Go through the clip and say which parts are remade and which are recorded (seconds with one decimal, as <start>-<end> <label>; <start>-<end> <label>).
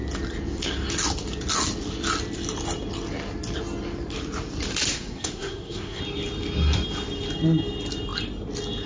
0.0-4.9 recorded; 4.9-6.0 remade; 6.0-8.9 recorded